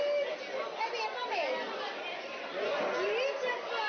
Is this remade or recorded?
recorded